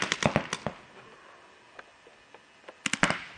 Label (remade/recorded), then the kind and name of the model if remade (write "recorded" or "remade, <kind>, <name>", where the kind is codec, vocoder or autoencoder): recorded